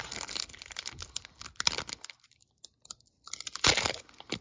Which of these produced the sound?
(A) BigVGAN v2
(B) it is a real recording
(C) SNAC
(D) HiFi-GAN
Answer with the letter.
B